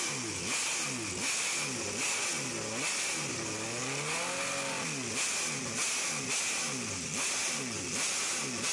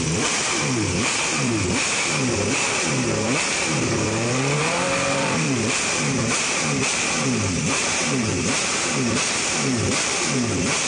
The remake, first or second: second